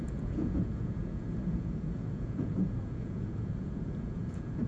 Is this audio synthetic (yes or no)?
yes